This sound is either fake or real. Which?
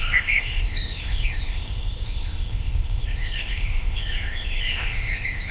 fake